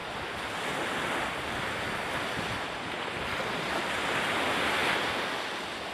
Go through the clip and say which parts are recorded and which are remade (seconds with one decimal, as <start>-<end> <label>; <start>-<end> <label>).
0.0-2.1 recorded; 2.1-4.8 remade; 4.8-5.9 recorded